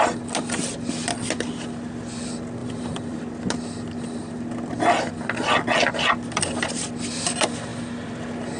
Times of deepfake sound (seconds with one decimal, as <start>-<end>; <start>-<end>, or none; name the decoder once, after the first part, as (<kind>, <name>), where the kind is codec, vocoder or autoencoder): 2.6-3.2 (vocoder, BigVGAN v2)